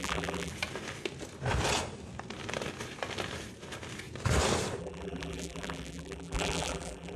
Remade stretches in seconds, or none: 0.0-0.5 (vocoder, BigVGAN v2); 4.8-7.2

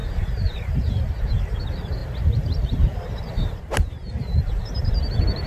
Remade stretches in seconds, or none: 0.0-5.5 (vocoder, BigVGAN v2)

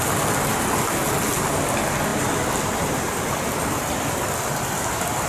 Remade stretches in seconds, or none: 2.1-4.3 (vocoder, BigVGAN v2)

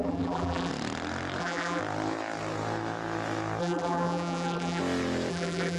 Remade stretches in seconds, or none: 0.0-0.7 (vocoder, BigVGAN v2); 1.4-1.8; 3.6-4.8; 5.3-5.8

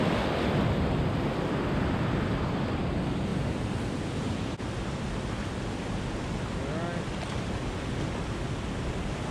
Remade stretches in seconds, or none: none